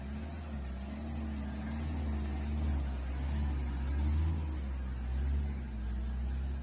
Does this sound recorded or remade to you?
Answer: recorded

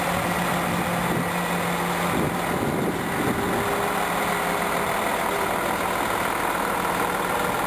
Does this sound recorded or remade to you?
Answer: recorded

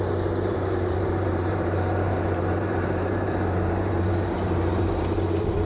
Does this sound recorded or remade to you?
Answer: remade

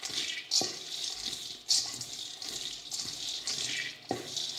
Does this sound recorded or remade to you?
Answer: recorded